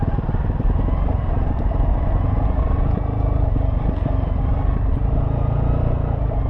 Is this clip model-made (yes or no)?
no